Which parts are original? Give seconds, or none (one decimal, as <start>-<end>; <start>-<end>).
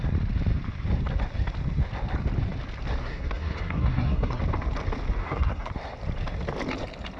0.0-3.0; 4.4-5.2; 5.7-7.2